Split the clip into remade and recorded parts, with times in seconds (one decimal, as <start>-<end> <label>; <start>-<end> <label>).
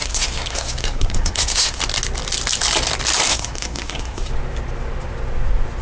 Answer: 0.0-1.8 remade; 1.8-3.3 recorded; 3.3-4.3 remade; 4.3-5.8 recorded